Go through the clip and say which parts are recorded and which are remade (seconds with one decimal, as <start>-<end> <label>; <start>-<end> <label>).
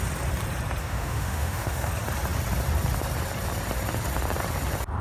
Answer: 0.0-0.8 recorded; 0.8-1.9 remade; 1.9-5.0 recorded